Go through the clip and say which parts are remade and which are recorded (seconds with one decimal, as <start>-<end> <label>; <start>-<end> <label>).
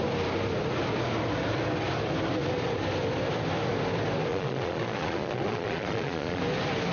0.0-4.3 recorded; 4.3-6.4 remade; 6.4-6.9 recorded